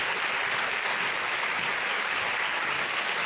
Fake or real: real